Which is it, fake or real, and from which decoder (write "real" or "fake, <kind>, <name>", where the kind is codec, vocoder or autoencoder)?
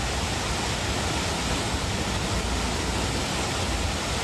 real